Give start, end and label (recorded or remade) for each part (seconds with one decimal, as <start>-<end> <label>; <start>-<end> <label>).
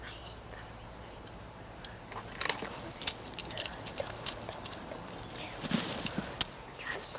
0.0-7.2 recorded